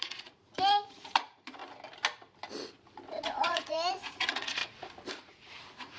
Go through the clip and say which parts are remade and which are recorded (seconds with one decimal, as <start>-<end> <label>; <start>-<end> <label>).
0.0-1.6 remade; 1.6-3.1 recorded; 3.1-4.6 remade; 4.6-5.1 recorded; 5.1-6.0 remade